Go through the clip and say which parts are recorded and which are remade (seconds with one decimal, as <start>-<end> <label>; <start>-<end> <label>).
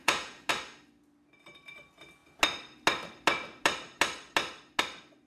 0.0-0.5 remade; 0.5-5.3 recorded